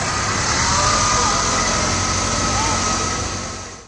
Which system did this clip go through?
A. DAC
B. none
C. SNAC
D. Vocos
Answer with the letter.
B